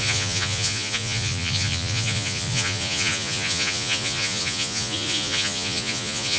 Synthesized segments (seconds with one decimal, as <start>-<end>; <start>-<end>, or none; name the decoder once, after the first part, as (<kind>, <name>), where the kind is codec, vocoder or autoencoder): 0.0-6.4 (vocoder, Vocos)